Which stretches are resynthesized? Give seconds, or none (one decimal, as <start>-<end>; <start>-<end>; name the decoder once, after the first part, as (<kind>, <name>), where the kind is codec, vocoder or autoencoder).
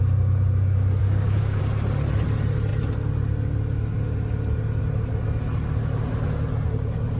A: 1.0-1.6 (codec, DAC)